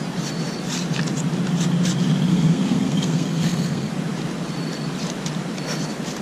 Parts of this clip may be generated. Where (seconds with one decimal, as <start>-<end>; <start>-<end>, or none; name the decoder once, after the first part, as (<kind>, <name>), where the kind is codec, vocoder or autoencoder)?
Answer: 2.3-3.9 (codec, SNAC)